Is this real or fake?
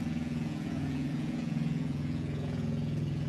fake